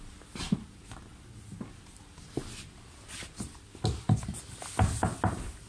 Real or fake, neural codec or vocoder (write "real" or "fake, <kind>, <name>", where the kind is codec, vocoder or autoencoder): real